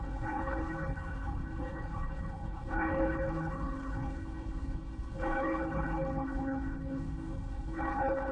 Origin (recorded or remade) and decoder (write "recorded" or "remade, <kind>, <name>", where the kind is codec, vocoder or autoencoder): remade, codec, HILCodec